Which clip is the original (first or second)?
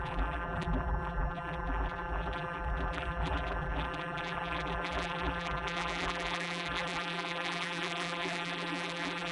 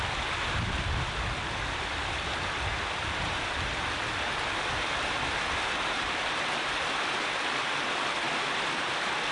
second